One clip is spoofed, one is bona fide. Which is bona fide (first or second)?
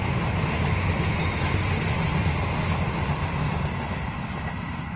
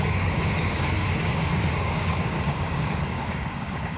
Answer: first